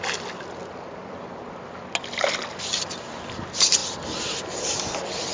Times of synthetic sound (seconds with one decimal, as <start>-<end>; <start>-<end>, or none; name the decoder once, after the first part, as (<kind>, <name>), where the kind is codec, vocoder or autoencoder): none